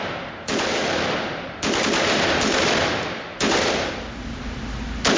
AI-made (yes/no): no